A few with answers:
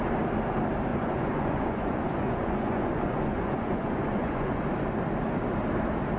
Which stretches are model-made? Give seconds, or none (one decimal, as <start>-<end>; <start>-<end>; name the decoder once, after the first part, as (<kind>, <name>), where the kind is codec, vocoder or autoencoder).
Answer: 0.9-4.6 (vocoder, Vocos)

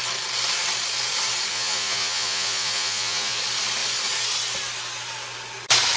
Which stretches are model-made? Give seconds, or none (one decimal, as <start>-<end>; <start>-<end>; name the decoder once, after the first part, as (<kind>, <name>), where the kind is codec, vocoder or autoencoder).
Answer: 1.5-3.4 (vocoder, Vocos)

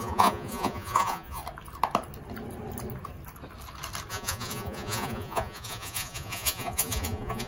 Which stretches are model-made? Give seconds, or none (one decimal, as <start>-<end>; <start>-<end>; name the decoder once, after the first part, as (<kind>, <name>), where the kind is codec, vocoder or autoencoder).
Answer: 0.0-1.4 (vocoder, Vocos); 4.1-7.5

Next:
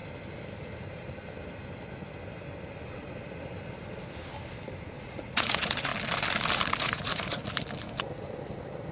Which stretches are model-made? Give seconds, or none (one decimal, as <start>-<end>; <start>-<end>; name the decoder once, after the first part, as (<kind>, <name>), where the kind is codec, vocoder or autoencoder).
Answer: 5.0-5.9 (vocoder, Vocos); 6.8-7.4